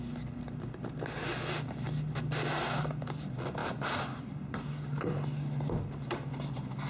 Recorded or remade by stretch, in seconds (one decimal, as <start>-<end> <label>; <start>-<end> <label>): 0.0-6.9 recorded